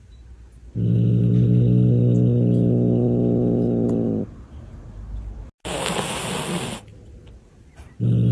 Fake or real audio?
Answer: real